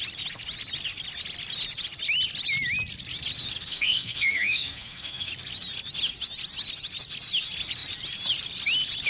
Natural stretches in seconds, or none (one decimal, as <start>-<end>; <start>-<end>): 0.0-3.7; 5.3-9.1